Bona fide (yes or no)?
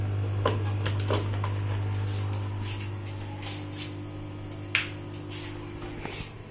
yes